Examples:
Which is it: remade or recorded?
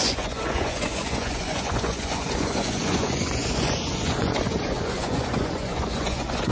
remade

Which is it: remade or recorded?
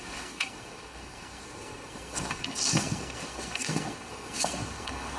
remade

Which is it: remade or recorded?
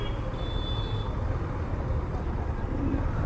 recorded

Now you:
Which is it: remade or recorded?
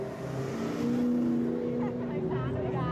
recorded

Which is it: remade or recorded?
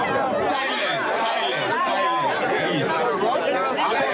recorded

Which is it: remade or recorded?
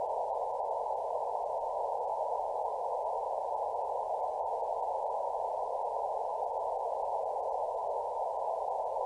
recorded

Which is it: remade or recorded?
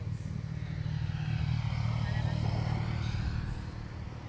recorded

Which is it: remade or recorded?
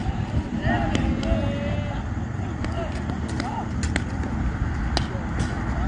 recorded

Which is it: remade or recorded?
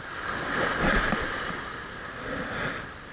recorded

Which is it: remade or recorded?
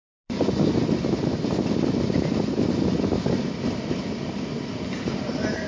recorded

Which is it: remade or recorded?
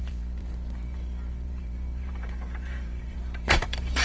remade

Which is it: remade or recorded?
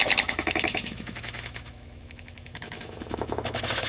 remade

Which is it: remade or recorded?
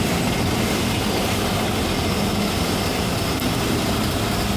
recorded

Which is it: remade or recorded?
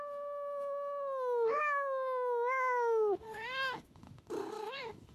remade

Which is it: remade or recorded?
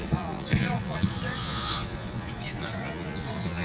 remade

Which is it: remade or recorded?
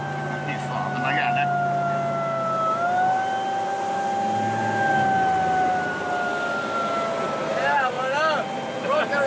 recorded